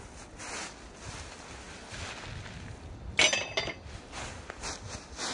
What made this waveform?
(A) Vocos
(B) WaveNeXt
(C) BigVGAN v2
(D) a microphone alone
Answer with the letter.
D